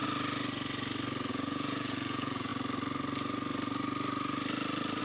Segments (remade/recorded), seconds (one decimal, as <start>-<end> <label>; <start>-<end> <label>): 0.0-1.3 recorded; 1.3-2.5 remade; 2.5-5.0 recorded